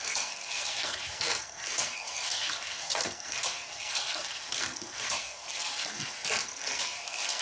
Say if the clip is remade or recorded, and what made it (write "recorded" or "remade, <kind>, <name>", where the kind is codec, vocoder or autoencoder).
remade, codec, SNAC